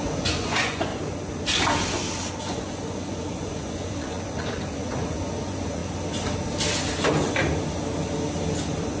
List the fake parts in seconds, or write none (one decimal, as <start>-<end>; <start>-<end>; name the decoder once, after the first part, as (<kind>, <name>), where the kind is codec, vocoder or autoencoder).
0.0-0.9 (vocoder, Vocos); 2.4-5.8; 8.6-9.0

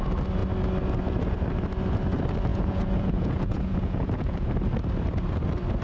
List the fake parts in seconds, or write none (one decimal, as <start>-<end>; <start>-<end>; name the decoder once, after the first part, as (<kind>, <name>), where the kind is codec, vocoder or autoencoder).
2.5-4.5 (vocoder, Vocos)

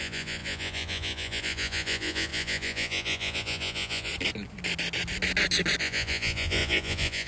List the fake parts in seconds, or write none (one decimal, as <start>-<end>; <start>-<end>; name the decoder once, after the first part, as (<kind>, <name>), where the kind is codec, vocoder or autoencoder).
0.0-4.1 (vocoder, Vocos); 5.8-7.3

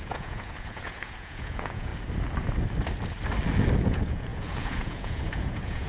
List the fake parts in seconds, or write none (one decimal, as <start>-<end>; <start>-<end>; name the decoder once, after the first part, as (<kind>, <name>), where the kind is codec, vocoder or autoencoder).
0.0-1.9 (vocoder, Vocos); 3.8-5.9